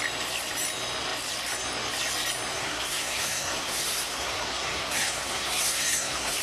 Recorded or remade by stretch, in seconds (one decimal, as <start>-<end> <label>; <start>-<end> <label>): 0.0-2.5 recorded; 2.5-6.4 remade